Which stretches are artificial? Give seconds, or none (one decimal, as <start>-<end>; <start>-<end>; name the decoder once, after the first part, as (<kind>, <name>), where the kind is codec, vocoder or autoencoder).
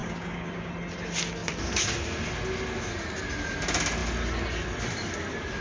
0.0-0.7 (codec, DAC)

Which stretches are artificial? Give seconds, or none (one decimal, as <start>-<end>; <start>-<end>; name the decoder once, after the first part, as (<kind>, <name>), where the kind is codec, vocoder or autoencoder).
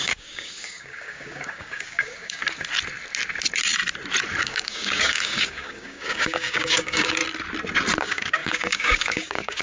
0.0-2.4 (codec, DAC); 4.4-7.2; 8.0-9.6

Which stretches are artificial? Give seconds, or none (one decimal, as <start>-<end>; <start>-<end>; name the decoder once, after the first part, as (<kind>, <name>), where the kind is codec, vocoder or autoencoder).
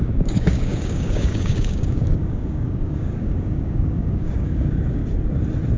0.0-5.0 (codec, DAC)